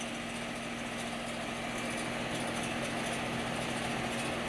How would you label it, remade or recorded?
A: recorded